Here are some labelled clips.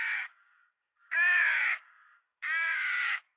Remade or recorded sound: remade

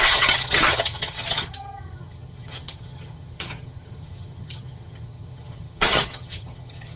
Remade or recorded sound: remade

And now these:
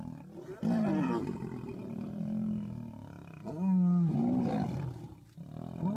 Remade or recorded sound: recorded